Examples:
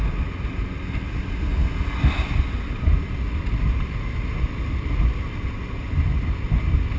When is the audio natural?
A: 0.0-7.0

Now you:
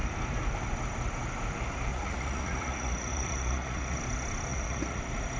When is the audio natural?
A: 0.0-1.9; 4.0-4.5; 5.0-5.4

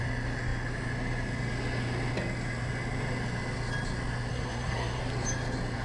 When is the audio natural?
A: 0.0-4.3; 5.0-5.8

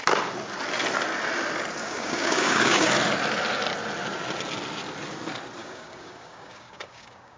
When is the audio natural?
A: 0.0-1.8; 2.9-5.6

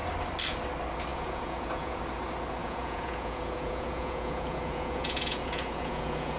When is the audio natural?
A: 0.0-1.1; 2.0-2.6

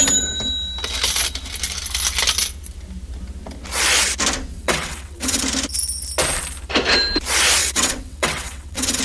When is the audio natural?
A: 0.0-4.5; 5.4-7.6

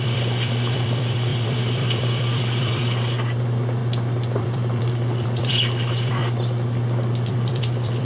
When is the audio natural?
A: 3.8-4.4; 6.2-7.3